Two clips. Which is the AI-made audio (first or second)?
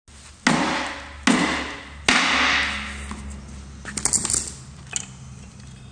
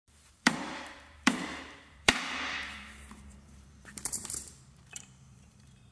second